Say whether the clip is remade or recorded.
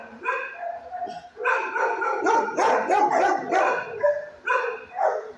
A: remade